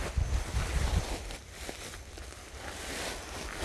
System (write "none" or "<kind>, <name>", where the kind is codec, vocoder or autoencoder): none